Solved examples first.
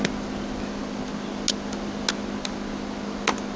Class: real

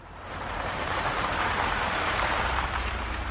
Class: fake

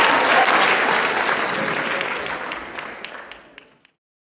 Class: real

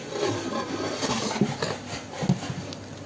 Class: real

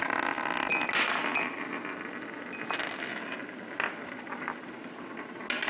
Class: real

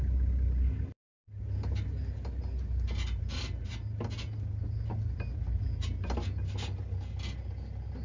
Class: real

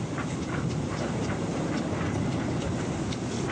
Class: real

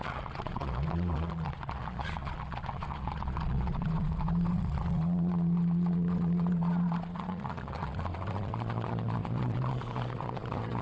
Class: fake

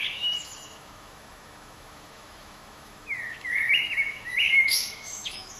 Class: fake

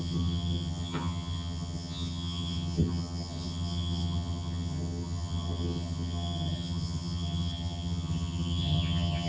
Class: fake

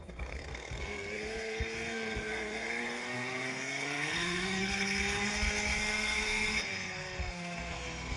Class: fake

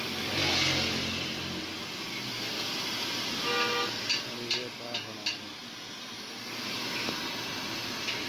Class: real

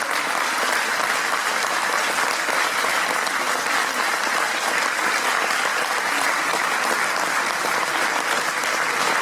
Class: real